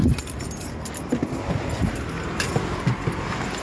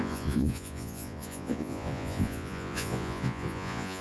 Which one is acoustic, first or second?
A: first